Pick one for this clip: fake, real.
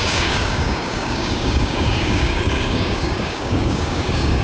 fake